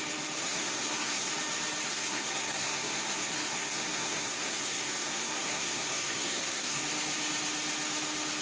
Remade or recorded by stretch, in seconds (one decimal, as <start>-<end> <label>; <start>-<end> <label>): 0.0-0.4 recorded; 0.4-1.3 remade; 1.3-1.9 recorded; 1.9-6.8 remade; 6.8-8.4 recorded